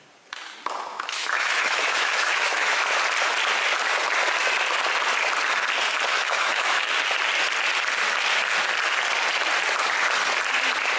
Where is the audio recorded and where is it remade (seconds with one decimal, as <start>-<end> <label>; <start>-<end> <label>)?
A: 0.0-0.9 recorded; 0.9-2.8 remade; 2.8-6.1 recorded; 6.1-6.9 remade; 6.9-11.0 recorded